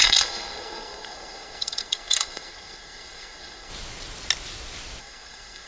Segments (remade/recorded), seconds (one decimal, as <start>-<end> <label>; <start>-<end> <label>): 0.0-3.7 remade; 3.7-5.0 recorded; 5.0-5.7 remade